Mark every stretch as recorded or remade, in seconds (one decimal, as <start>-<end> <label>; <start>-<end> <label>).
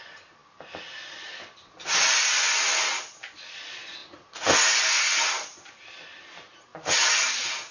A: 0.0-7.7 recorded